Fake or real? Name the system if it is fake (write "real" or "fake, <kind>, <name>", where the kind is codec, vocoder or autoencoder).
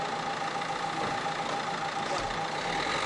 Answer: real